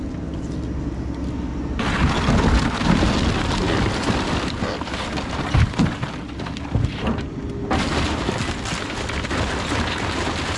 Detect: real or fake real